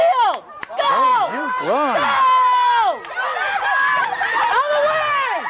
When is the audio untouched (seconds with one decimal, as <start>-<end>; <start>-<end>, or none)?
0.0-5.5